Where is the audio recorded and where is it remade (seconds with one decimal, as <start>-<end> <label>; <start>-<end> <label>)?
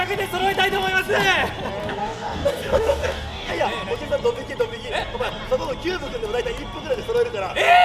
0.0-1.8 recorded; 1.8-3.5 remade; 3.5-7.8 recorded